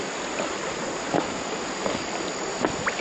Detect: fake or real real